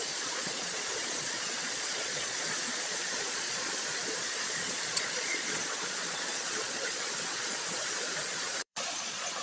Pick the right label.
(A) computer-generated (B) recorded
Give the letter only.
A